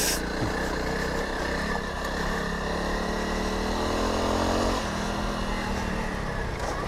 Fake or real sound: real